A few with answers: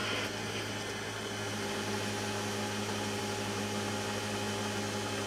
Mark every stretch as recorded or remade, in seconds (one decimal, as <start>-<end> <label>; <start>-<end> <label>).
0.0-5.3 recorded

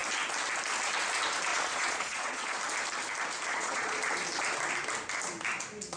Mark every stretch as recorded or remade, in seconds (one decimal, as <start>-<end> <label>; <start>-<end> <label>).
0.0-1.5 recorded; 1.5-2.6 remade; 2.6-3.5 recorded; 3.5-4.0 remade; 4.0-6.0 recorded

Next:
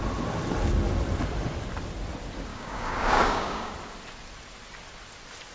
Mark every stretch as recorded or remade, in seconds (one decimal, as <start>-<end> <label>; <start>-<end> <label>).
0.0-2.5 recorded; 2.5-3.7 remade; 3.7-5.5 recorded